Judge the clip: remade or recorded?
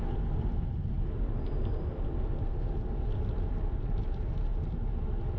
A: recorded